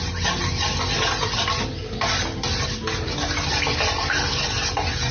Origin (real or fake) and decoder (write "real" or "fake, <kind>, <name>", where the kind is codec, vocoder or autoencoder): real